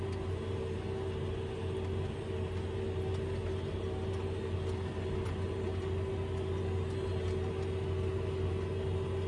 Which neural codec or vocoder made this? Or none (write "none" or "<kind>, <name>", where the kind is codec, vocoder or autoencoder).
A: none